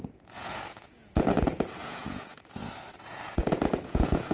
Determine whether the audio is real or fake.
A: fake